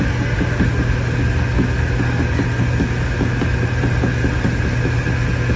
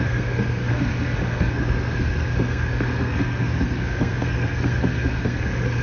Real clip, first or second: first